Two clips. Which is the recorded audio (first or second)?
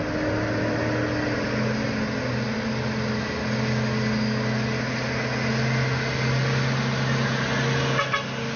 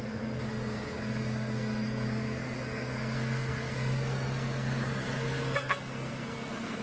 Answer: first